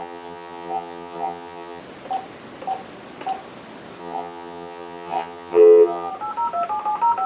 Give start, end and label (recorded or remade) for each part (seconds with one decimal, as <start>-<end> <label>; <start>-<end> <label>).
0.0-1.8 remade; 1.8-4.0 recorded; 4.0-6.1 remade; 6.1-7.3 recorded